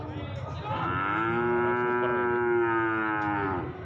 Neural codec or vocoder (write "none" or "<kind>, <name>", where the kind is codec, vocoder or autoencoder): none